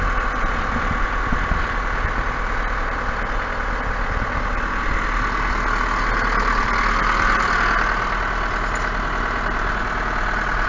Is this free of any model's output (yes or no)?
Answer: yes